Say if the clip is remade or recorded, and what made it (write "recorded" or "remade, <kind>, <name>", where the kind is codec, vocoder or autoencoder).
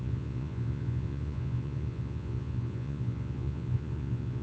remade, vocoder, Vocos